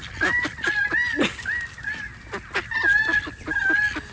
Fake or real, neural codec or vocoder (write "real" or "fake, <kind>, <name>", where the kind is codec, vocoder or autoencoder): real